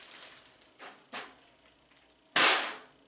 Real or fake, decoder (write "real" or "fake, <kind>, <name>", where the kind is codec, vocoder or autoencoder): real